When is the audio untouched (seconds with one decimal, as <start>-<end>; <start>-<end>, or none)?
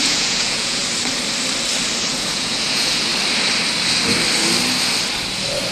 0.8-2.1; 3.1-5.7